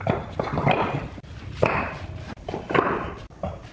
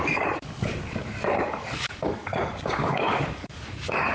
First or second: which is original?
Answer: first